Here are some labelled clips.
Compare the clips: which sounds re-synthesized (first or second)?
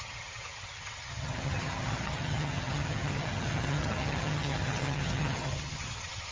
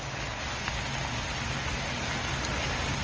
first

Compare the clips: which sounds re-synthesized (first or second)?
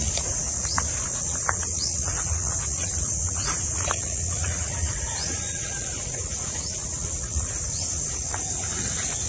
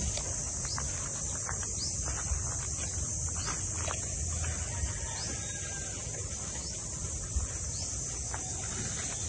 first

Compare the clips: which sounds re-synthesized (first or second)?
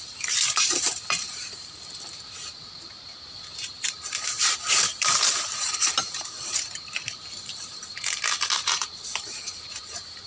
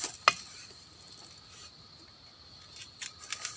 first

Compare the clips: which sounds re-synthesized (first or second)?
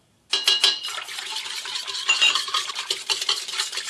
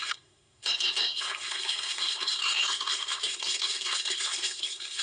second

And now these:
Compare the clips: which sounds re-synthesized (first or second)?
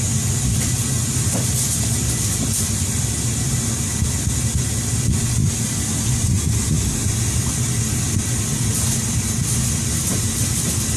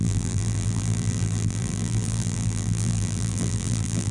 second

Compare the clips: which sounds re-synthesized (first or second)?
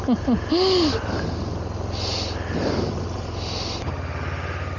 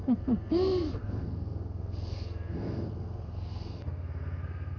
second